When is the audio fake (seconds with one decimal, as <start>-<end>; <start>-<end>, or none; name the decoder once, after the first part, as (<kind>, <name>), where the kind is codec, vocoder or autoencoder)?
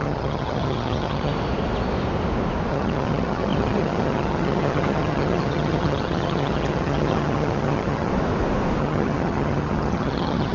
0.0-1.3 (vocoder, HiFi-GAN); 2.7-8.1; 8.8-10.5